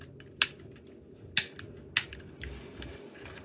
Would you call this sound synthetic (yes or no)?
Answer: no